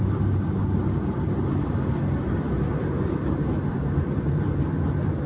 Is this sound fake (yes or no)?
no